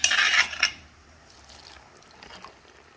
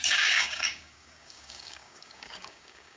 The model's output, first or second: second